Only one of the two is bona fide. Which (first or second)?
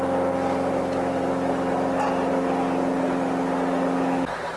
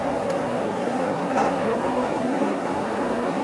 first